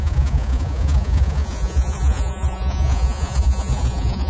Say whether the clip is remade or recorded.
remade